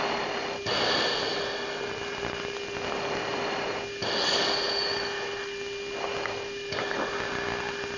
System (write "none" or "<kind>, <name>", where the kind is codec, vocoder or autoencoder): none